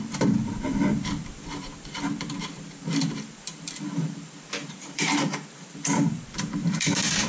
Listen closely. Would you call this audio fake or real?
fake